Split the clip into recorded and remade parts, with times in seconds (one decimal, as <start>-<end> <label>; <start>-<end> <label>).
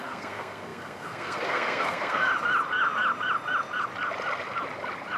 0.0-2.3 remade; 2.3-5.2 recorded